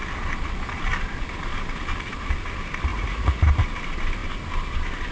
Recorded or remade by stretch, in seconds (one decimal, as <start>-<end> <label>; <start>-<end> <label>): 0.0-2.9 recorded; 2.9-3.4 remade; 3.4-5.1 recorded